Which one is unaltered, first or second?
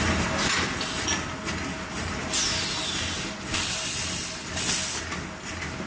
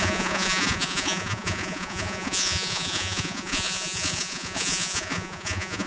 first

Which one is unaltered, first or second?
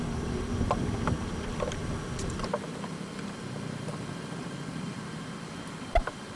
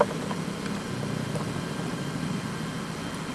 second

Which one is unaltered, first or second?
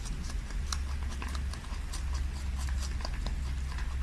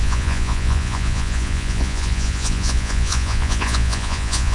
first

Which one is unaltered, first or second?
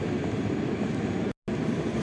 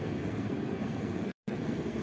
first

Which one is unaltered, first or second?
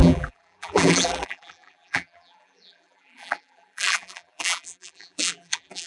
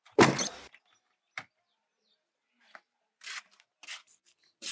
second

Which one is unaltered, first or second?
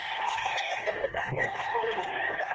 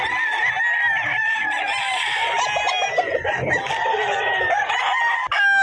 second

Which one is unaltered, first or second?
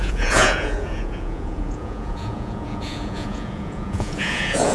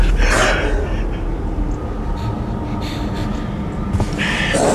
second